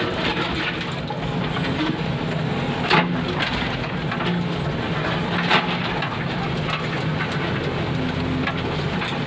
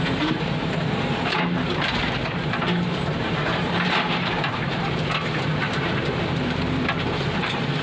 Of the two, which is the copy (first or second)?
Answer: second